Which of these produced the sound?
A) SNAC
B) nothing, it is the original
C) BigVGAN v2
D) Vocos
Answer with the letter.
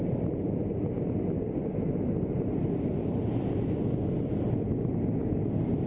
B